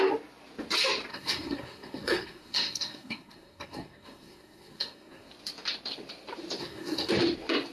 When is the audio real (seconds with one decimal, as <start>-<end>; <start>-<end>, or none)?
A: 0.0-1.1; 5.3-6.6; 7.1-7.7